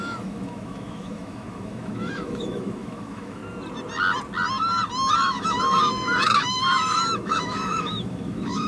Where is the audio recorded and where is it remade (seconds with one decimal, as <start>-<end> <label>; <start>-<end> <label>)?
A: 0.0-3.4 remade; 3.4-5.2 recorded; 5.2-8.7 remade